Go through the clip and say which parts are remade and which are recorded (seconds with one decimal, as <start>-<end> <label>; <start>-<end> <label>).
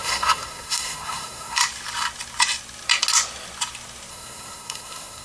0.0-1.6 remade; 1.6-4.1 recorded; 4.1-5.2 remade